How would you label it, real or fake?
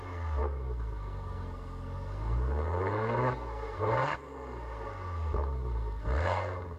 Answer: fake